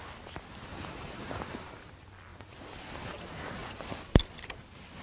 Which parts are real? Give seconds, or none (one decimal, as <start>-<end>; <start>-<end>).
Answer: 0.0-0.7; 1.9-2.3; 3.0-3.6; 4.2-5.0

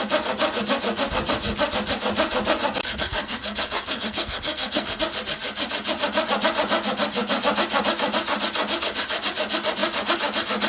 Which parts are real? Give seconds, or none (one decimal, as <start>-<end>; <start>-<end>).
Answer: 0.0-2.8; 5.0-10.7

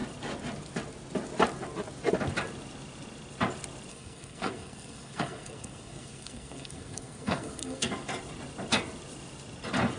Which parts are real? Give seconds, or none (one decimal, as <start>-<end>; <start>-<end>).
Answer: 0.0-3.9; 7.9-10.0

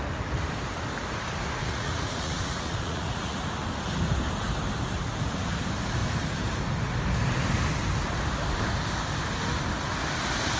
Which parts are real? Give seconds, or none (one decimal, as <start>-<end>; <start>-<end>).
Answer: 0.0-1.6; 3.4-10.6

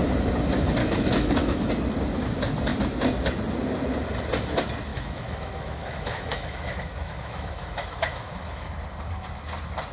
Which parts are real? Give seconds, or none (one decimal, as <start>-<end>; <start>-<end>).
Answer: 0.0-0.8; 1.7-4.9; 8.7-9.9

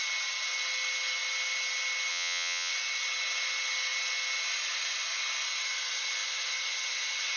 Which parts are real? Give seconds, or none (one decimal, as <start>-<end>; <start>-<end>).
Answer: 0.0-2.1; 2.7-7.4

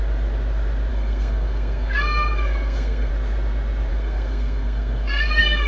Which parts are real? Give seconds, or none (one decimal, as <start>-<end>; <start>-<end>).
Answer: 0.0-0.9; 3.1-3.9